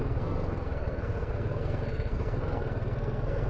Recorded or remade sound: remade